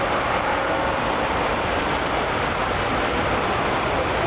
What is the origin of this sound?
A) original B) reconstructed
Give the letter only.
A